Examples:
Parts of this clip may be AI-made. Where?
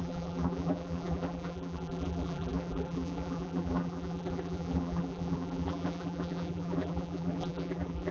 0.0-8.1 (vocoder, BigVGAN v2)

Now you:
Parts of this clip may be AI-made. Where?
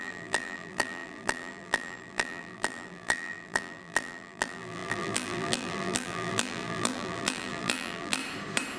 0.0-8.2 (vocoder, BigVGAN v2)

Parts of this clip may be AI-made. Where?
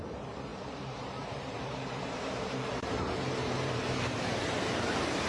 0.0-5.3 (vocoder, BigVGAN v2)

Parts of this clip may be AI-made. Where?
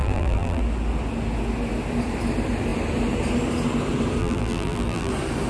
0.0-0.6 (vocoder, BigVGAN v2); 4.2-5.1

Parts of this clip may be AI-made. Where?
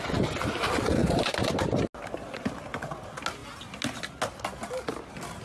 1.0-1.8 (vocoder, BigVGAN v2)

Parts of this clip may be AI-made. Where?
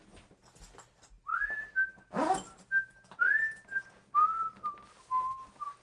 none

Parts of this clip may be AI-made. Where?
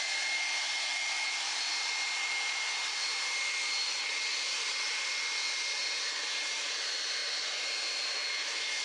0.0-7.2 (vocoder, BigVGAN v2); 8.4-8.8